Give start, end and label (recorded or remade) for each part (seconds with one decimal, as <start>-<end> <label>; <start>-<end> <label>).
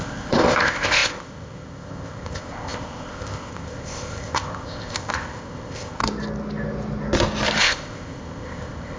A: 0.0-6.0 remade; 6.0-7.6 recorded; 7.6-9.0 remade